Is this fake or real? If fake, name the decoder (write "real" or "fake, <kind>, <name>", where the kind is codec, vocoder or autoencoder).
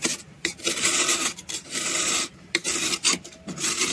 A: fake, vocoder, BigVGAN v2